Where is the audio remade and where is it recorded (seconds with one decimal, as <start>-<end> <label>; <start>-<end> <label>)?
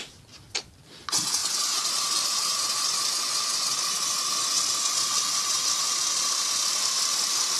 0.0-7.6 recorded